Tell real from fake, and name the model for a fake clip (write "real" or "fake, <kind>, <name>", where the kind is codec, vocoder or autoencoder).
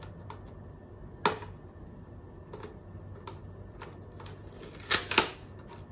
real